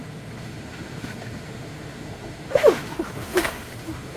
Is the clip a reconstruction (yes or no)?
yes